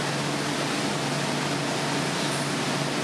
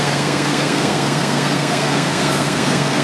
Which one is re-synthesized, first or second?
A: second